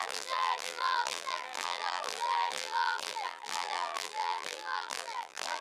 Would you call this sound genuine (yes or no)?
no